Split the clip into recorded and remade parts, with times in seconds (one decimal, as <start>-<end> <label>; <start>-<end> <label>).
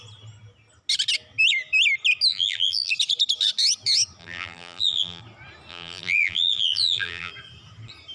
0.0-2.3 recorded; 2.3-2.9 remade; 2.9-4.2 recorded; 4.2-5.2 remade; 5.2-5.7 recorded; 5.7-7.3 remade; 7.3-8.1 recorded